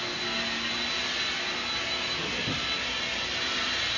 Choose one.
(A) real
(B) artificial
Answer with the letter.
A